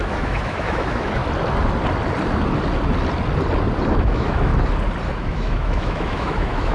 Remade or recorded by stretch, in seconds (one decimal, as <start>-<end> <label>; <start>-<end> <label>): 0.0-1.2 remade; 1.2-4.0 recorded; 4.0-4.5 remade; 4.5-5.1 recorded; 5.1-6.7 remade